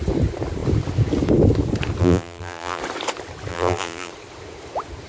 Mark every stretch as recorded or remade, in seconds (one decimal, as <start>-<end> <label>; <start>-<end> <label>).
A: 0.0-2.0 recorded; 2.0-2.8 remade; 2.8-3.5 recorded; 3.5-4.1 remade; 4.1-5.1 recorded